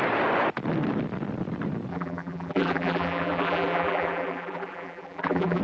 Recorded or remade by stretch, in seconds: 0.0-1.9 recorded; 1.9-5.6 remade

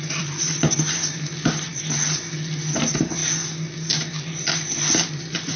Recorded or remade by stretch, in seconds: 0.0-3.2 remade; 3.2-3.8 recorded; 3.8-5.6 remade

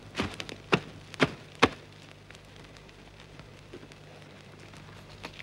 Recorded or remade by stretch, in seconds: 0.0-2.5 recorded; 2.5-3.5 remade; 3.5-5.4 recorded